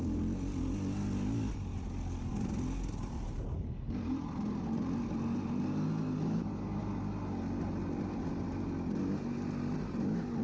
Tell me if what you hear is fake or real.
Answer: real